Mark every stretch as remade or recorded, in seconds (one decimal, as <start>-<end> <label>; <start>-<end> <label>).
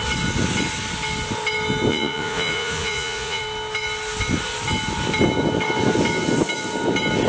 0.0-1.9 recorded; 1.9-3.4 remade; 3.4-7.3 recorded